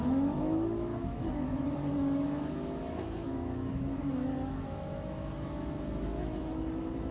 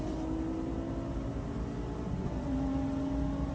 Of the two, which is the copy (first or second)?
first